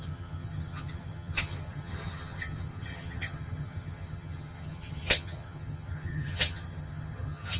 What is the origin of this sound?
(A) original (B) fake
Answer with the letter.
B